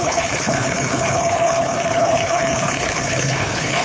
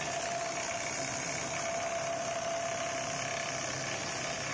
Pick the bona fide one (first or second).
second